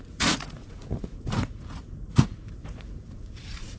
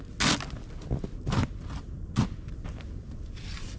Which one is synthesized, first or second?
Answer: first